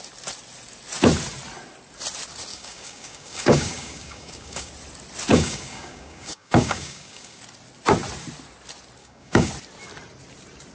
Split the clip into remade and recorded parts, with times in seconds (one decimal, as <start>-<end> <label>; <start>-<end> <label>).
0.0-2.5 recorded; 2.5-4.7 remade; 4.7-5.3 recorded; 5.3-7.4 remade; 7.4-9.0 recorded; 9.0-9.5 remade; 9.5-10.7 recorded